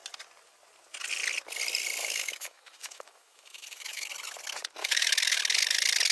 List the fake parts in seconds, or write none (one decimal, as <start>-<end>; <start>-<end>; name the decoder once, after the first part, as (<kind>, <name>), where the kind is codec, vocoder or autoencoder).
2.0-4.1 (autoencoder, DAC-VAE); 4.8-5.4